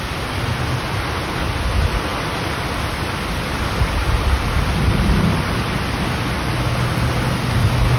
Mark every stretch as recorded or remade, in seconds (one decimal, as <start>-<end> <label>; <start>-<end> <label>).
0.0-8.0 recorded